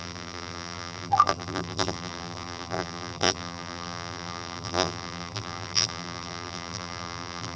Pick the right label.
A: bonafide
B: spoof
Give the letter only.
B